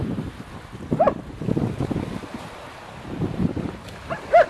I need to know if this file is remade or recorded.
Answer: recorded